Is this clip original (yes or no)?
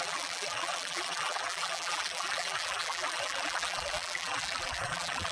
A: no